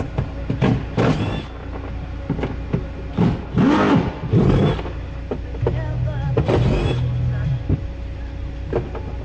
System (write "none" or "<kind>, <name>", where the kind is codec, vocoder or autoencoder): none